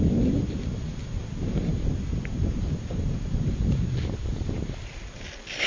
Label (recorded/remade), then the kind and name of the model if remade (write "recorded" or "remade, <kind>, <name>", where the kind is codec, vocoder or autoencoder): recorded